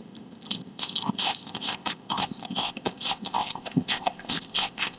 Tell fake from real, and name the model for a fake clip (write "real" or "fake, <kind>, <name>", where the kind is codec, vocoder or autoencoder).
fake, codec, ZipCodec